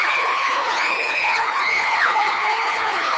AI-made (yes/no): yes